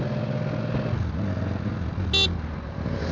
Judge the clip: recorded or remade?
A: recorded